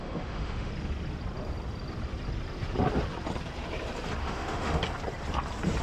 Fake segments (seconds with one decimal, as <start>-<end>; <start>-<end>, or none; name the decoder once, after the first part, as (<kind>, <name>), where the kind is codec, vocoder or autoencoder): 0.0-0.7 (autoencoder, DAC-VAE); 4.2-4.8